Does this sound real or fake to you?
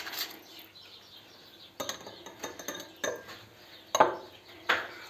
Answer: real